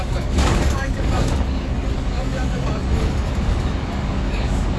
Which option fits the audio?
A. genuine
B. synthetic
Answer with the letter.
B